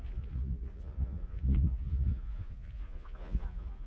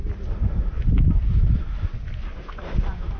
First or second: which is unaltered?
second